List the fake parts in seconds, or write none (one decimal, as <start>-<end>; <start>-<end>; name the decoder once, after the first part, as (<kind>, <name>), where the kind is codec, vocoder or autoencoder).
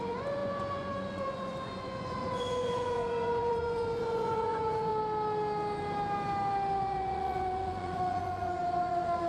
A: 0.0-4.9 (vocoder, Vocos); 6.8-9.3